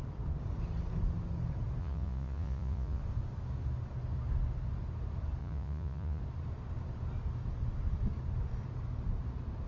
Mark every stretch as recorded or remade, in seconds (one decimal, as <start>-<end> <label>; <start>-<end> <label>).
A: 0.0-1.8 recorded; 1.8-3.0 remade; 3.0-5.4 recorded; 5.4-6.2 remade; 6.2-9.7 recorded